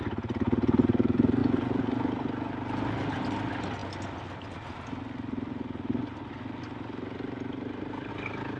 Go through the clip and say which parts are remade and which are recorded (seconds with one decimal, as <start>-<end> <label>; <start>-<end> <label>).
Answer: 0.0-8.6 recorded